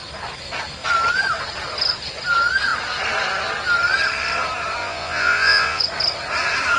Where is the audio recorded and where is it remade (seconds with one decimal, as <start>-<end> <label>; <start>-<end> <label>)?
0.0-4.8 recorded; 4.8-5.8 remade; 5.8-6.8 recorded